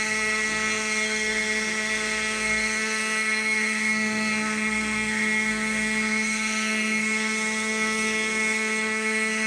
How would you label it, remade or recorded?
remade